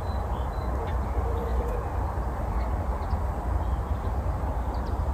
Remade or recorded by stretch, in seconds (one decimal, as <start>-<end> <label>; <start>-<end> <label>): 0.0-5.1 recorded